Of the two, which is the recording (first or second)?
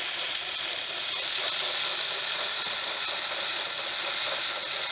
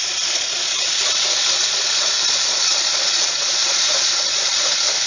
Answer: first